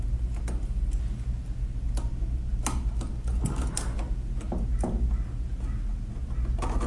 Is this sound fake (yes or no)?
no